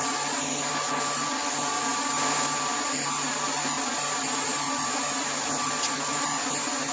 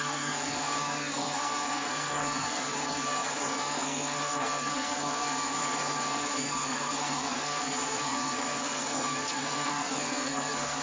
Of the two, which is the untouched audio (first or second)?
first